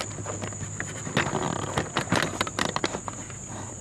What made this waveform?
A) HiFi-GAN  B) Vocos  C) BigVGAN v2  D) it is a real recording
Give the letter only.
D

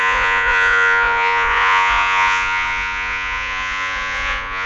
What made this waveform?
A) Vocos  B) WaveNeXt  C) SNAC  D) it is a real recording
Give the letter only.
A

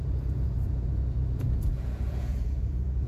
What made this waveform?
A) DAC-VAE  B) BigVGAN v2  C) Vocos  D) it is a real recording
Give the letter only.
C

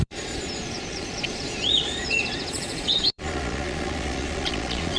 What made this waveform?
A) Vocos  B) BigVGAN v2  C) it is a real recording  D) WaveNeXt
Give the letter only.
A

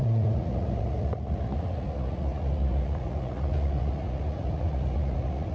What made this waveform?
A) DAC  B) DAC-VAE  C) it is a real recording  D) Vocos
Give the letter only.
D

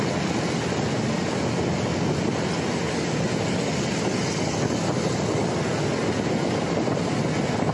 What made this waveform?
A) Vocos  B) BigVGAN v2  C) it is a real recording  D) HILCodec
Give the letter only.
C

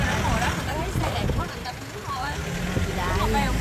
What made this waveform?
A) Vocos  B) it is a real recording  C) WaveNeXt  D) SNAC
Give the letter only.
B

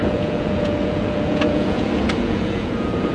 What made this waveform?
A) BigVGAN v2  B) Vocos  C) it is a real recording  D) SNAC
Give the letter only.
B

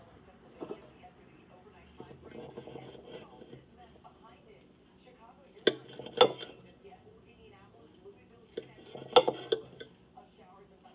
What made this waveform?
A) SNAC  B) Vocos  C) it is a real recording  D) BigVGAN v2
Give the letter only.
C